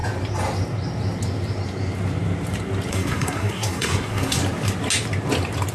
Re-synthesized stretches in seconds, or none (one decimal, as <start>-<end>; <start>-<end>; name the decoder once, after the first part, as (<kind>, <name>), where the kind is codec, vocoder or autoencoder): 2.9-4.4 (codec, SNAC)